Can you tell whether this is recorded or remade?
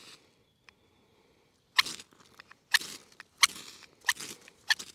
recorded